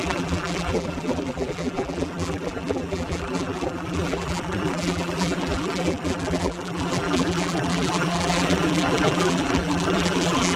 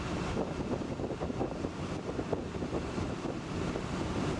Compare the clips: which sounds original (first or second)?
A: second